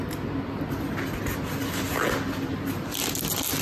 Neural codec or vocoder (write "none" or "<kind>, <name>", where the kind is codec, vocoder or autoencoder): none